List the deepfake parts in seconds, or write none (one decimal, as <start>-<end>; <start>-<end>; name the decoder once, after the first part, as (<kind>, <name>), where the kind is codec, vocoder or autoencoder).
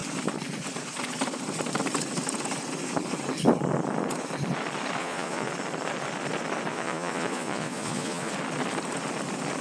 5.0-5.5 (vocoder, Vocos); 6.7-8.3